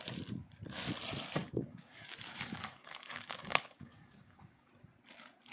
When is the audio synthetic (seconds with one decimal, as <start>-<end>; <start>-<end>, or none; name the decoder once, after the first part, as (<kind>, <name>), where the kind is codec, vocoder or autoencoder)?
1.4-4.7 (codec, DAC)